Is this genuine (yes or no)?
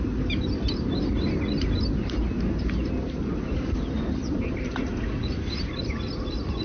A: yes